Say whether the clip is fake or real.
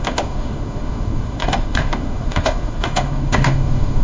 fake